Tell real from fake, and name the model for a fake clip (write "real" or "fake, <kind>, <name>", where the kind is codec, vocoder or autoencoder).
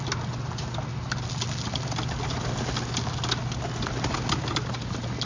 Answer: real